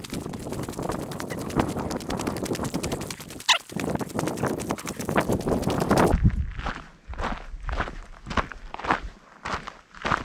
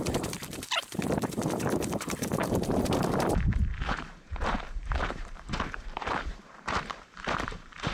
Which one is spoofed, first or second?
second